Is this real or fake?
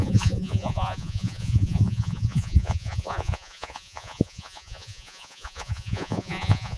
fake